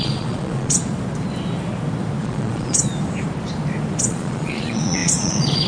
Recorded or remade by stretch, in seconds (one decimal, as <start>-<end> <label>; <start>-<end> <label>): 0.0-0.8 remade; 0.8-2.2 recorded; 2.2-2.9 remade; 2.9-4.0 recorded; 4.0-5.7 remade

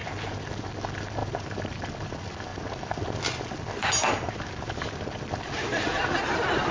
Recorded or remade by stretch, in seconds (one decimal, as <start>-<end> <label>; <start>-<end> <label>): 0.0-6.7 recorded

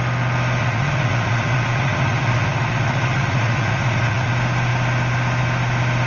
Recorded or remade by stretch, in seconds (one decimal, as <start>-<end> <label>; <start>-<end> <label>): 0.0-0.6 recorded; 0.6-4.3 remade; 4.3-6.1 recorded